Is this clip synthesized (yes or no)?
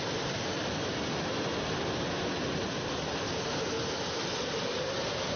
no